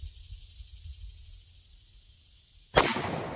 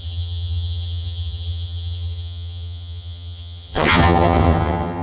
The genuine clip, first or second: first